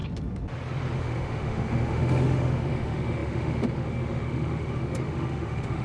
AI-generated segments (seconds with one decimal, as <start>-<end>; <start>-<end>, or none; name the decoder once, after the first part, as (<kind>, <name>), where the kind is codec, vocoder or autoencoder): 1.0-5.8 (autoencoder, DAC-VAE)